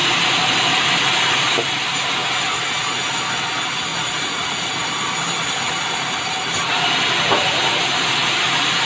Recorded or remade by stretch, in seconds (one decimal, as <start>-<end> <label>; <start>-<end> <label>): 0.0-3.9 recorded; 3.9-4.7 remade; 4.7-8.9 recorded